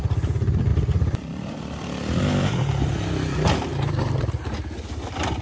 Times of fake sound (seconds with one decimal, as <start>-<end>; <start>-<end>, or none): 0.7-3.9